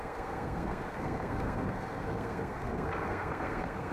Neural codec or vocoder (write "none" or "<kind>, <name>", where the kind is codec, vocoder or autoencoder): codec, SNAC